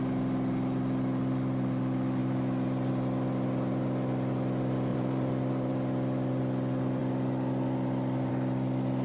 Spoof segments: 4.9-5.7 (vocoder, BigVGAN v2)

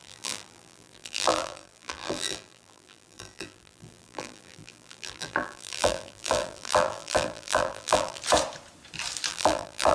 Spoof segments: 0.0-8.2 (vocoder, BigVGAN v2); 9.3-9.9